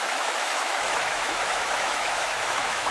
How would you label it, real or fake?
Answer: fake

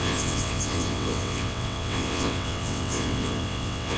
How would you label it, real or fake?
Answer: fake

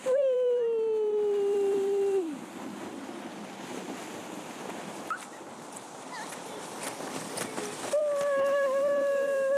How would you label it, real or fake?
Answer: fake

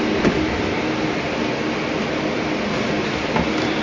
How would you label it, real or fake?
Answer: real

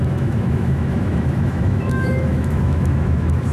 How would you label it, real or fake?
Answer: fake